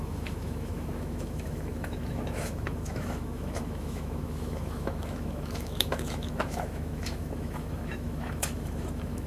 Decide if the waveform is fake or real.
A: fake